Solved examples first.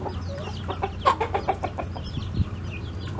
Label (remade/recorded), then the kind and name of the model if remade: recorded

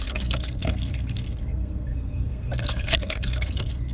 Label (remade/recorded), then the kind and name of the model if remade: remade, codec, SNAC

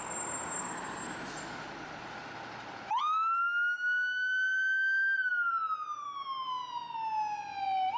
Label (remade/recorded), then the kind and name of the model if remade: recorded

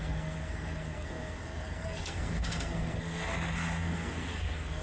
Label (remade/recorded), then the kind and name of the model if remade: remade, codec, SNAC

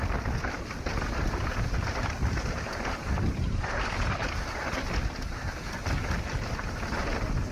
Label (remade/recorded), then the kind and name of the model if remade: recorded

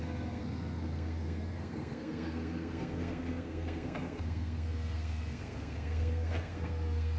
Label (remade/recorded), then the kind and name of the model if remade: remade, codec, SNAC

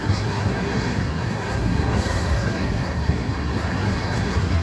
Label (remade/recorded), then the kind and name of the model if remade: remade, codec, SNAC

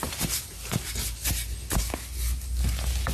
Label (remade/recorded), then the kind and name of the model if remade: recorded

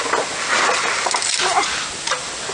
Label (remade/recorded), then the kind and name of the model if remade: recorded